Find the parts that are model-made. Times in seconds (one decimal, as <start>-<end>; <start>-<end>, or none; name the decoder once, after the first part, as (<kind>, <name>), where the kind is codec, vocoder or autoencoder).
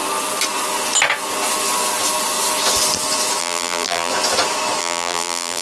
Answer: 3.4-4.1 (vocoder, BigVGAN v2); 4.8-5.6